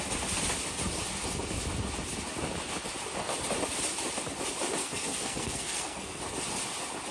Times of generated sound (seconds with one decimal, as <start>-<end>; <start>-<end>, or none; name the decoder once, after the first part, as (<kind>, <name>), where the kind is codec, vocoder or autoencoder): 4.8-6.2 (codec, SNAC)